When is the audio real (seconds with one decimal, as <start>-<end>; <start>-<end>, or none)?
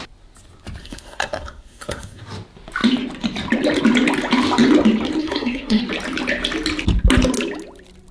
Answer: 0.0-0.8; 2.2-5.2; 5.8-8.1